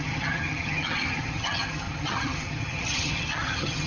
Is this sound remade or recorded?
remade